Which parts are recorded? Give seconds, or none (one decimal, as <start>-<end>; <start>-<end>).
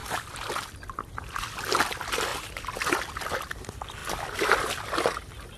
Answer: 1.9-2.3; 2.9-5.6